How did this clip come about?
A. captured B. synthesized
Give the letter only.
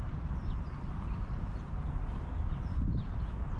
B